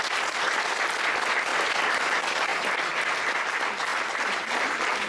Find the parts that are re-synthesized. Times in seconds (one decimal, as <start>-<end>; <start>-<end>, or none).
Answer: 1.5-2.0; 3.9-5.1